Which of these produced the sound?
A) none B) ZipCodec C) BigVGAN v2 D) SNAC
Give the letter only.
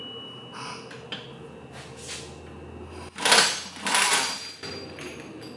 A